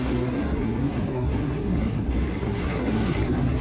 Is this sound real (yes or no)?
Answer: no